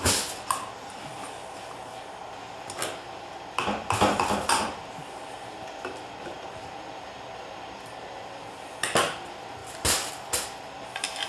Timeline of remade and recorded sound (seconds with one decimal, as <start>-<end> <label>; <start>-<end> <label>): 0.0-11.3 remade